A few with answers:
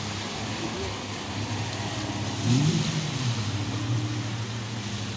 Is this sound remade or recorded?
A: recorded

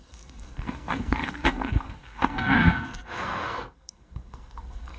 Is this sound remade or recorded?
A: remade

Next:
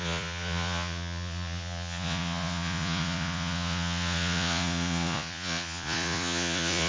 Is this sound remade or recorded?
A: remade